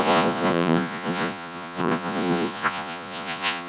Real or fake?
fake